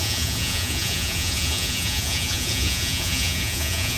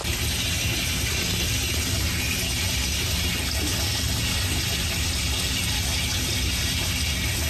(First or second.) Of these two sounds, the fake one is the first